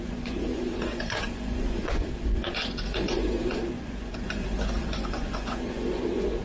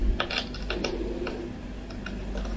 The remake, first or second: first